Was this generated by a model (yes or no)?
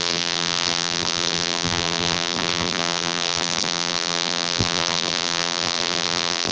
yes